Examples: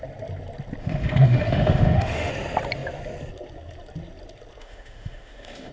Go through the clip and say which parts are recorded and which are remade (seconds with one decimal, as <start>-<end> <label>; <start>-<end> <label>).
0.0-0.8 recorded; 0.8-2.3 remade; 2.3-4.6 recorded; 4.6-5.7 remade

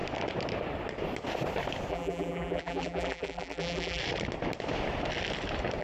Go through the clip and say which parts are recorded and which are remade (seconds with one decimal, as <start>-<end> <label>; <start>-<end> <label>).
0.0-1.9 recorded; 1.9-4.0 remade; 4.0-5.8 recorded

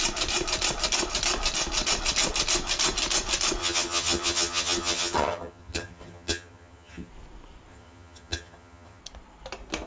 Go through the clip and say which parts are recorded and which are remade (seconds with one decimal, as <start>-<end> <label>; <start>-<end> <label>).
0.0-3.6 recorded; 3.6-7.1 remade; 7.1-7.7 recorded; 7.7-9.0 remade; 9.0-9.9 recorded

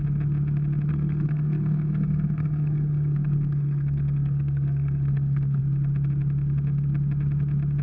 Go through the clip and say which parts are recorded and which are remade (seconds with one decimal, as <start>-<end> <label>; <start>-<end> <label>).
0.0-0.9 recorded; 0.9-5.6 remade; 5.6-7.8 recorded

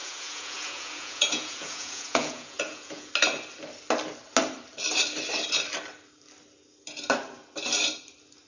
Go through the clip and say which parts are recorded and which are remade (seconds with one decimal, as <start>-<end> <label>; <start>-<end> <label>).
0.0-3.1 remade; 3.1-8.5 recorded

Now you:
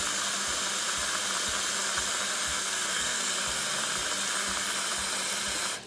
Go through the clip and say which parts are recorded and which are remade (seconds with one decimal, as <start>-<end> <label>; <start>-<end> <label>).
0.0-2.5 recorded; 2.5-3.3 remade; 3.3-5.9 recorded

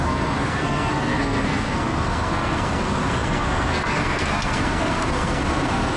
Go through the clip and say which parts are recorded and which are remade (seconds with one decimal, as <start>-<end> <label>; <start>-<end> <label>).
0.0-6.0 remade